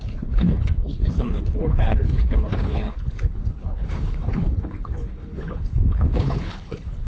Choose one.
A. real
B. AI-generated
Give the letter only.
B